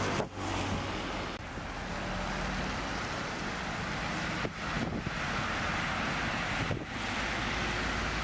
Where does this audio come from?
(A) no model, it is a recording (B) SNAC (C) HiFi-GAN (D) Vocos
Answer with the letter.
A